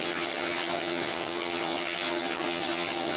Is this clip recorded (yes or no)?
no